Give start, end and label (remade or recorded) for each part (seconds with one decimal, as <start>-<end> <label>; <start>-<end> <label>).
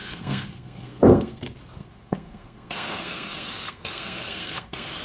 0.0-1.4 remade; 1.4-1.8 recorded; 1.8-5.0 remade